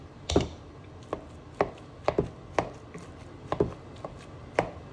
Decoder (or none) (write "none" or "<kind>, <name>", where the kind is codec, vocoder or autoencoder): none